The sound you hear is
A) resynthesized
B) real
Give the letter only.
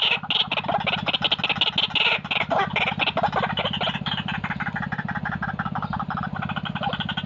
B